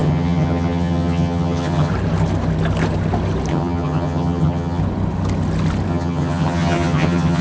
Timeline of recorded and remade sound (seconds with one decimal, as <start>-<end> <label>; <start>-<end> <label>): 0.0-1.9 remade; 1.9-3.5 recorded; 3.5-4.8 remade; 4.8-5.9 recorded; 5.9-7.4 remade